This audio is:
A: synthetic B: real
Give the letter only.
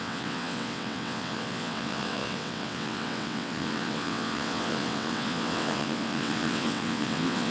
A